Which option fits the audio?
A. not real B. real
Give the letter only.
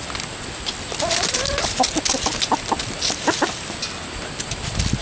B